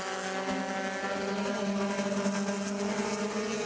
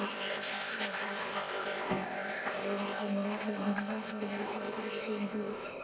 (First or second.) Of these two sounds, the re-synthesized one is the second